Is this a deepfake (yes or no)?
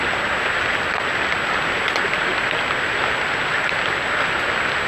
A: no